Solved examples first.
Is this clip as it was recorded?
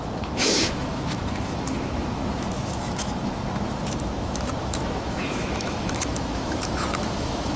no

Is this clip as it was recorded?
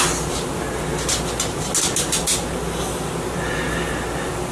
yes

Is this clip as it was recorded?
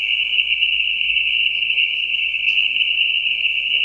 no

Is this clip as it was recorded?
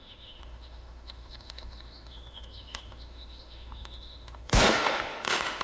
no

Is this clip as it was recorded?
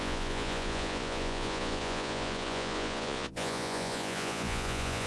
no